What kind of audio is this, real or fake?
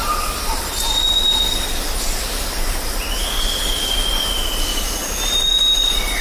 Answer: real